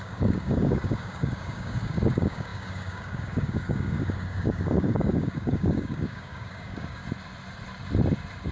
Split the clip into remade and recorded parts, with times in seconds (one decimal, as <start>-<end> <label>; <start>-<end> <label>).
0.0-7.0 remade; 7.0-8.5 recorded